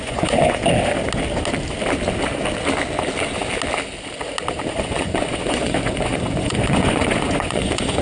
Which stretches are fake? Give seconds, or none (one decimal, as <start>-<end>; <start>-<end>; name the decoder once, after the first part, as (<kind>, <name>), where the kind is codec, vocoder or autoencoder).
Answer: 0.0-0.6 (vocoder, Vocos); 4.7-8.0